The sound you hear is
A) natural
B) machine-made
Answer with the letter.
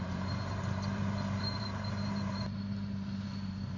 B